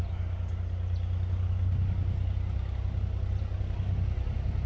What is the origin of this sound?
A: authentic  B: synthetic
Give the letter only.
A